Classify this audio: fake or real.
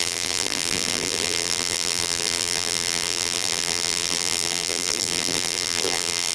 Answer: fake